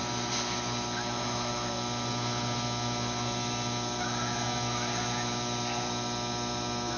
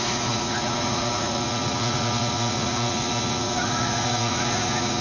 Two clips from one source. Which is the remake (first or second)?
second